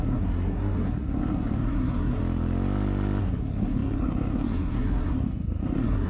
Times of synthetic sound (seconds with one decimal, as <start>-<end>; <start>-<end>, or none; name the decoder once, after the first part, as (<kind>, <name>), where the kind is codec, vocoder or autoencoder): 0.0-2.2 (codec, SNAC); 3.2-6.1